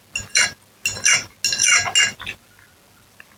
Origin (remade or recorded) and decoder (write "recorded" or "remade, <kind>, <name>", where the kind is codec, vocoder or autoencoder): recorded